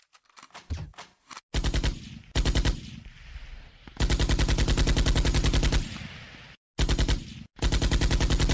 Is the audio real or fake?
real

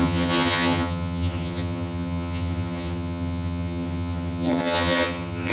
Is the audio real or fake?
fake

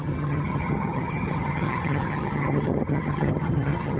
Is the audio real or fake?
fake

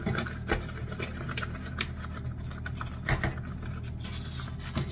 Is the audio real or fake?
real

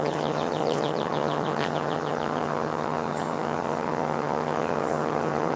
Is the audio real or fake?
fake